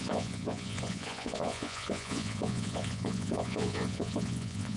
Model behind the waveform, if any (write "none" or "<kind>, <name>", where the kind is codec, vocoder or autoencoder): vocoder, Vocos